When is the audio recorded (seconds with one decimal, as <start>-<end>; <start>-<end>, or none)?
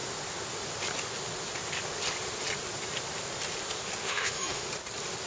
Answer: 0.0-4.0; 4.7-5.3